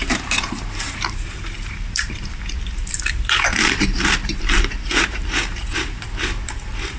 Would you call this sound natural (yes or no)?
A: no